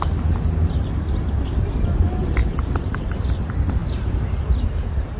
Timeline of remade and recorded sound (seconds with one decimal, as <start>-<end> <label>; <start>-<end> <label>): 0.0-2.4 recorded; 2.4-3.1 remade; 3.1-3.8 recorded; 3.8-4.5 remade; 4.5-5.2 recorded